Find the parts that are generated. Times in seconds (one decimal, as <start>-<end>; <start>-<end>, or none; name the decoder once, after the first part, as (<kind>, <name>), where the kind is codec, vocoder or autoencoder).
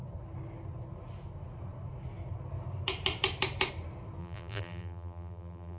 4.2-5.8 (vocoder, BigVGAN v2)